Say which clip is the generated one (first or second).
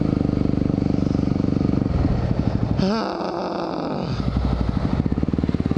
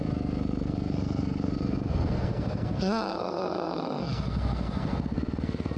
second